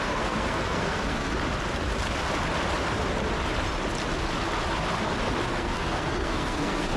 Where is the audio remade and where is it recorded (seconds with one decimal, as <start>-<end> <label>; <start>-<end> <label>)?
0.0-1.3 remade; 1.3-5.5 recorded; 5.5-7.0 remade